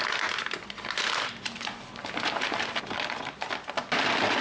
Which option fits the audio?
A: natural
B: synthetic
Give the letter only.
A